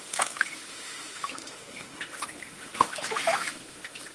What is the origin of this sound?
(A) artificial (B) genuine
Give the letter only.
A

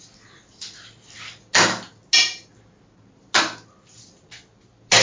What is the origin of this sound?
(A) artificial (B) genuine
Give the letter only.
B